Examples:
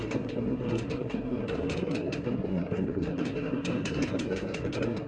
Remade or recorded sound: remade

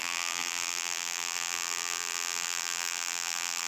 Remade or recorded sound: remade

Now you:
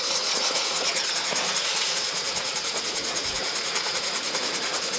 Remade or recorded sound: remade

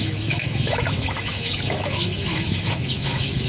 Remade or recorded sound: remade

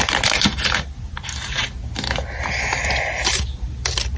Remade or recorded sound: recorded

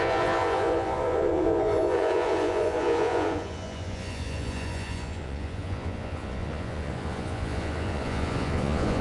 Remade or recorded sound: remade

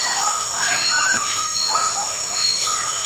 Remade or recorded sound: remade